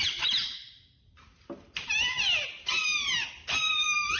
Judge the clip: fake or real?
real